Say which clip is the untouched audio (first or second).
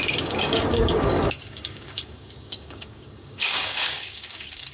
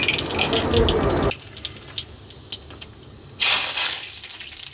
second